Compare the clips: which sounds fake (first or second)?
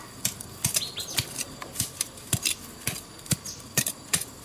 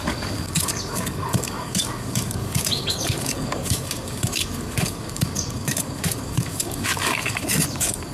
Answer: second